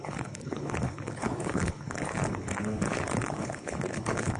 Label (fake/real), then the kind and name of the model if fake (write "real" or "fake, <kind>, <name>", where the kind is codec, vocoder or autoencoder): fake, codec, HILCodec